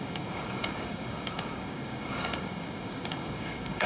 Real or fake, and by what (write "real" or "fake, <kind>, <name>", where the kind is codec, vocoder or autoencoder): fake, codec, DAC